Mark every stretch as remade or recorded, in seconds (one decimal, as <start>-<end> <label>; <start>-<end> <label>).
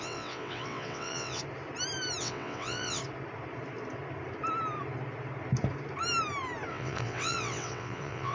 0.0-1.4 remade; 1.4-2.2 recorded; 2.2-3.0 remade; 3.0-6.7 recorded; 6.7-8.3 remade